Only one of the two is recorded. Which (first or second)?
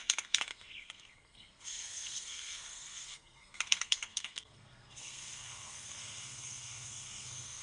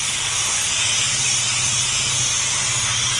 second